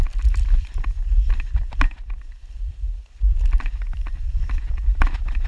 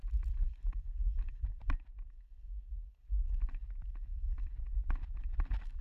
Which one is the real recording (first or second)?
second